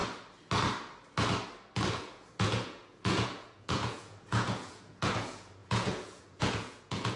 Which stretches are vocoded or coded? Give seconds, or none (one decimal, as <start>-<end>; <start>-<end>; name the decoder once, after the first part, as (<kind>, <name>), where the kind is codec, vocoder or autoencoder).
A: 1.9-7.2 (vocoder, Vocos)